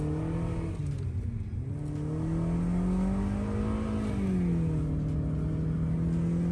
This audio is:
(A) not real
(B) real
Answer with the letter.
B